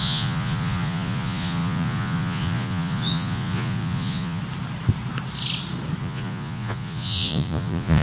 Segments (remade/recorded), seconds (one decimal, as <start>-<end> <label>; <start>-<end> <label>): 0.0-4.4 remade; 4.4-6.0 recorded; 6.0-8.0 remade

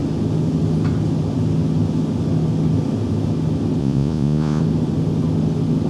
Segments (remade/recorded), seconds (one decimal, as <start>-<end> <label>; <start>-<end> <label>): 0.0-3.8 recorded; 3.8-4.6 remade; 4.6-5.9 recorded

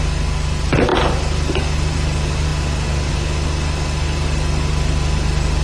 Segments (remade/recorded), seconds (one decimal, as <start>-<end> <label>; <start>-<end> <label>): 0.0-5.6 recorded

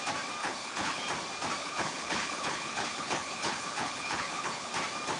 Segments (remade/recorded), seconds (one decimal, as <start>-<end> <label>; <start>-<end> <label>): 0.0-0.4 recorded; 0.4-1.0 remade; 1.0-1.6 recorded; 1.6-4.7 remade; 4.7-5.2 recorded

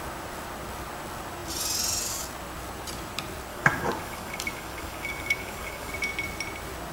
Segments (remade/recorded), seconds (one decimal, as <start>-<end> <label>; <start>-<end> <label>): 0.0-3.5 recorded; 3.5-5.9 remade; 5.9-6.9 recorded